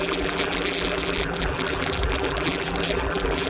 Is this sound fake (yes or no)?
yes